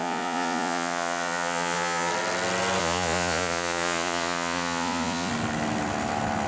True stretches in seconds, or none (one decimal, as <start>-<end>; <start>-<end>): 2.1-2.8; 5.3-6.5